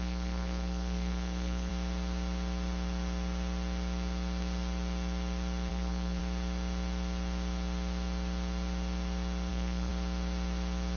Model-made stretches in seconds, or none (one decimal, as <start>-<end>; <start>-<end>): 0.0-1.7; 5.7-6.2; 9.5-9.9